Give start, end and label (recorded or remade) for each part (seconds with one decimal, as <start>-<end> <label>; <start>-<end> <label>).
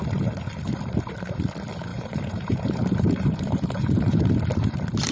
0.0-1.9 recorded; 1.9-4.3 remade; 4.3-5.1 recorded